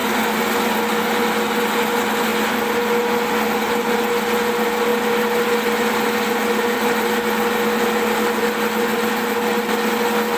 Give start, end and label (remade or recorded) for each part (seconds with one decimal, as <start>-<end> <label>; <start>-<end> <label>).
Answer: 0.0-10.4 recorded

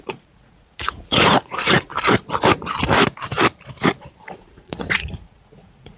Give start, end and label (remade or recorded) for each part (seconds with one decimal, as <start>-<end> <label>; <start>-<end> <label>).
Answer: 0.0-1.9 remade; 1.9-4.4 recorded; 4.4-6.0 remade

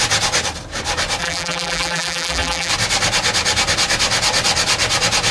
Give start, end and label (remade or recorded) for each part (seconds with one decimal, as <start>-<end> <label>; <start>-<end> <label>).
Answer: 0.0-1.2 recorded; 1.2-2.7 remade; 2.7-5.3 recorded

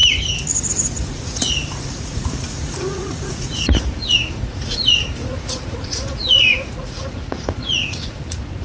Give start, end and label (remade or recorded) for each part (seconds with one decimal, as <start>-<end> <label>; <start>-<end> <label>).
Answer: 0.0-0.5 recorded; 0.5-8.6 remade

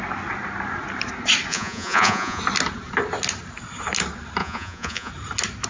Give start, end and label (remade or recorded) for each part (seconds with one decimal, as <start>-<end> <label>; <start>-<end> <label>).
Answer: 0.0-1.5 recorded; 1.5-2.4 remade; 2.4-4.4 recorded; 4.4-5.1 remade; 5.1-5.7 recorded

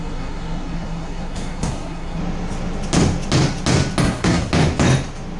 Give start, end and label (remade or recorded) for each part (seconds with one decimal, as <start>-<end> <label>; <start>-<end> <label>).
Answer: 0.0-2.2 remade; 2.2-4.0 recorded; 4.0-4.5 remade; 4.5-5.4 recorded

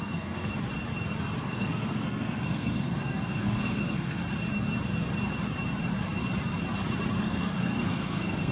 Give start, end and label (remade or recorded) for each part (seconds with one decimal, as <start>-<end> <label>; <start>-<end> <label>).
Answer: 0.0-0.5 remade; 0.5-1.4 recorded; 1.4-4.2 remade; 4.2-7.2 recorded; 7.2-8.5 remade

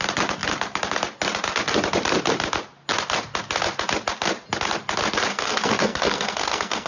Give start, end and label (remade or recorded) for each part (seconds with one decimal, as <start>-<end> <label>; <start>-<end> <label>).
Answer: 0.0-5.3 recorded; 5.3-6.9 remade